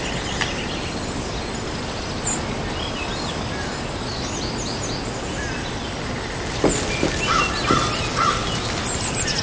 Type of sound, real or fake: real